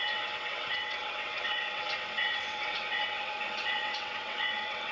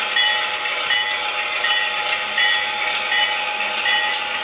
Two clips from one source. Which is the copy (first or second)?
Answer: first